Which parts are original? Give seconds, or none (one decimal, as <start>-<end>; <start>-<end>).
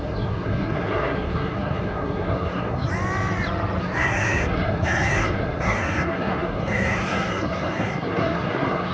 2.9-3.8